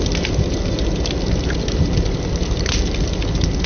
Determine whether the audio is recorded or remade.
recorded